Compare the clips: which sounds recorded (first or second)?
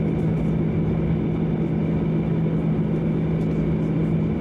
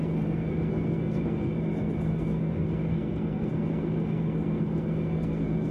first